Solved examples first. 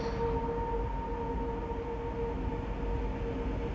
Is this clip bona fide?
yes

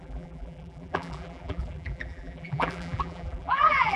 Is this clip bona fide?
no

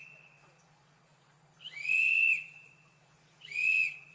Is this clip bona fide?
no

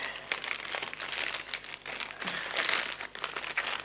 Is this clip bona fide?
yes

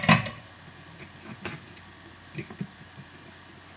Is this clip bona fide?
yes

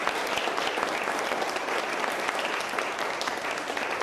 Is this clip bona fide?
yes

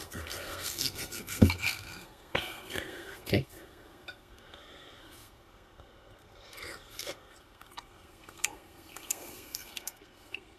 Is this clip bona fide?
no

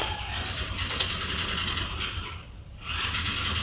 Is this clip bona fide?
yes